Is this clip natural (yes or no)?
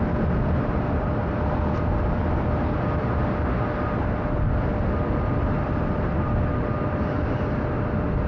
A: yes